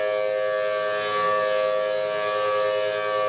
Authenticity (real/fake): real